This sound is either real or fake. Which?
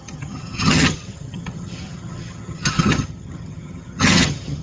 fake